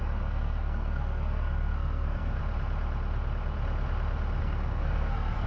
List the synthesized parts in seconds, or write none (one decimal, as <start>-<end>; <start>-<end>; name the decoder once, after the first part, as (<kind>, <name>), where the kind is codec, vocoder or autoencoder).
0.0-2.4 (codec, SNAC); 4.4-5.5